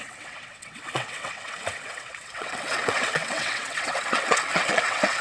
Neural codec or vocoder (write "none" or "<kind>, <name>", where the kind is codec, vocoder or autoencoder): vocoder, WaveNeXt